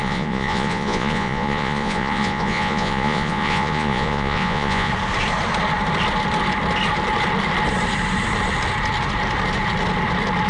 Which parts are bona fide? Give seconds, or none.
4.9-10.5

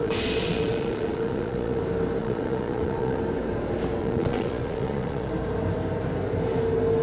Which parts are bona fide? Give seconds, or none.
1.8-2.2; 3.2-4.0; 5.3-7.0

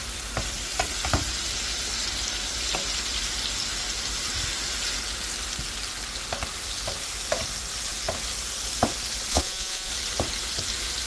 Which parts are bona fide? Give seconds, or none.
0.0-9.3; 9.9-11.1